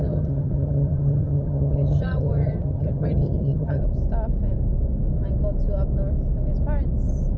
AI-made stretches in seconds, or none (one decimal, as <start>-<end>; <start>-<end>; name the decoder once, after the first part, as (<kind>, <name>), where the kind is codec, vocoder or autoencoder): 0.0-3.8 (vocoder, HiFi-GAN)

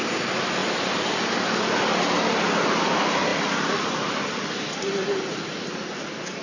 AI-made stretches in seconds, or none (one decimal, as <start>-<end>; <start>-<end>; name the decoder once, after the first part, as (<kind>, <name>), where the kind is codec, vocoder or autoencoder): none

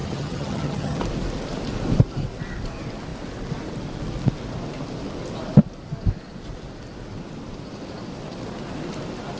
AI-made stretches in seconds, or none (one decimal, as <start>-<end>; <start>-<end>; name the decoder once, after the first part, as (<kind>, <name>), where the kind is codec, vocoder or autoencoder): 0.0-1.0 (vocoder, HiFi-GAN)